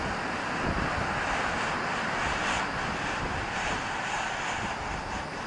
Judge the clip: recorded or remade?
recorded